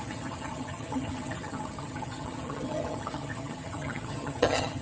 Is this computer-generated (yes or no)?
yes